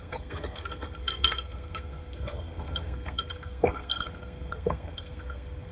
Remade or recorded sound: remade